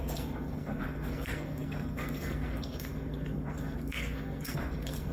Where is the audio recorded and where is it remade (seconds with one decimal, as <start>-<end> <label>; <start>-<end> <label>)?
0.0-5.1 remade